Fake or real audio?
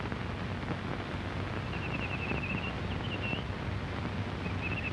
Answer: real